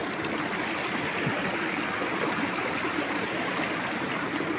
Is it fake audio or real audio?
real